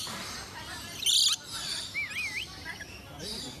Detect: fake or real real